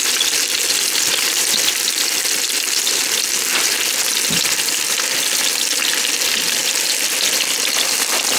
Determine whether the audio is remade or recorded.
recorded